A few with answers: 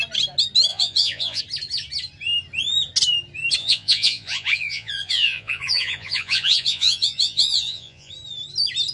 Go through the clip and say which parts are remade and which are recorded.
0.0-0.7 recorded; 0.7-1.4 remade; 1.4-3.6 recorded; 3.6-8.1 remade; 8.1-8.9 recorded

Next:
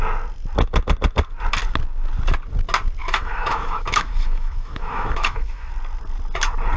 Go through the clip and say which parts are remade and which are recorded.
0.0-3.0 recorded; 3.0-5.7 remade; 5.7-6.8 recorded

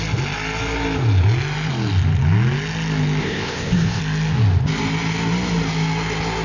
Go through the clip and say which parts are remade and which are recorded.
0.0-3.2 recorded; 3.2-4.0 remade; 4.0-6.4 recorded

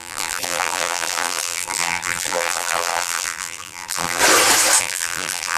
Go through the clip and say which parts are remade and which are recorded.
0.0-4.2 remade; 4.2-4.8 recorded; 4.8-5.6 remade